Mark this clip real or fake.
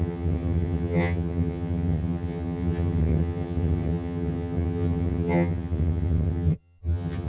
fake